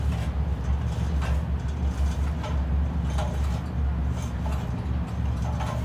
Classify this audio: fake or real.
real